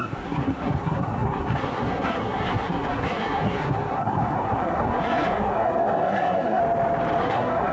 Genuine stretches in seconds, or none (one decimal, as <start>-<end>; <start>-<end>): 6.6-7.2